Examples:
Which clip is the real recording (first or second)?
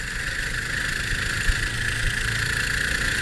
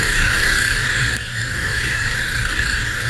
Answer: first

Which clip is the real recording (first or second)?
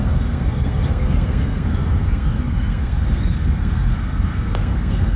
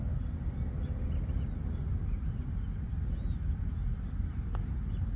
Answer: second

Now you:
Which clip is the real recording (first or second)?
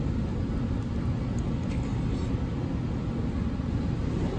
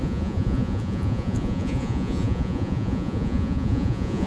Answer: first